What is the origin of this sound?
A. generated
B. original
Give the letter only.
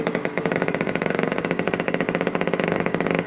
A